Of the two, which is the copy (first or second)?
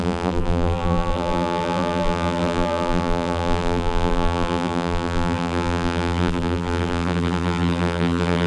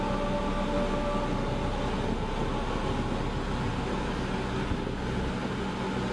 first